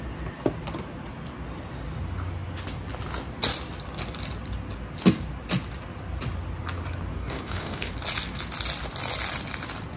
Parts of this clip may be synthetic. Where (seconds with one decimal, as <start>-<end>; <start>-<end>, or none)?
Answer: 7.1-7.9